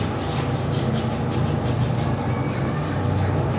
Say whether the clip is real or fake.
real